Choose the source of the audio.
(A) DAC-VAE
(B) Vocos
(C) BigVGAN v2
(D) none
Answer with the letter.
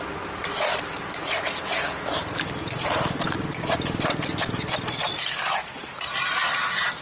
D